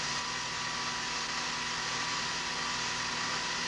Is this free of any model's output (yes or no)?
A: yes